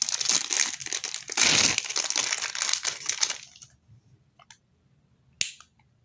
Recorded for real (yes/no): yes